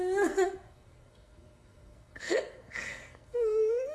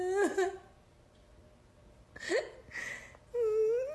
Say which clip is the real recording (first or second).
second